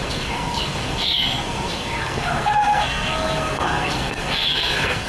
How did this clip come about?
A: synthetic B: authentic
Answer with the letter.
A